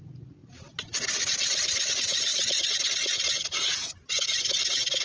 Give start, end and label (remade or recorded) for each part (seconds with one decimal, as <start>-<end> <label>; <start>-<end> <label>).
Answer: 0.0-0.4 remade; 0.4-1.9 recorded; 1.9-2.3 remade; 2.3-3.6 recorded; 3.6-5.0 remade